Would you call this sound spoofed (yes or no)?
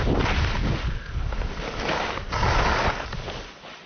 no